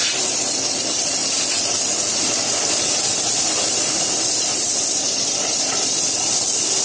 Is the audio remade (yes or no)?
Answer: yes